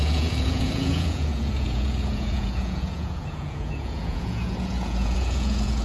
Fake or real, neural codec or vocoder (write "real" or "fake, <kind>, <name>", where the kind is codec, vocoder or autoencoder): fake, vocoder, Vocos